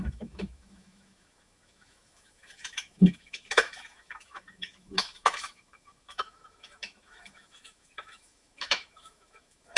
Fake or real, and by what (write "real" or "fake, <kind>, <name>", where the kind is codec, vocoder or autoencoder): fake, autoencoder, DAC-VAE